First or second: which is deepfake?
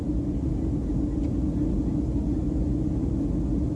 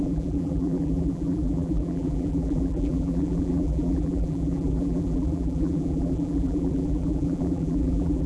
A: second